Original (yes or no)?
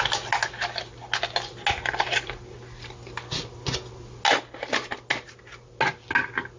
yes